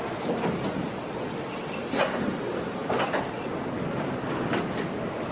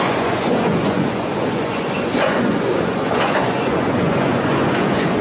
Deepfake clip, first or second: second